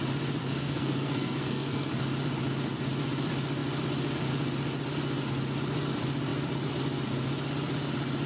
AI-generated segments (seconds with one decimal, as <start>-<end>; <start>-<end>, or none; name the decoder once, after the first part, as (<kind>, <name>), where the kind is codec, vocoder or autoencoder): 0.4-1.9 (codec, SNAC)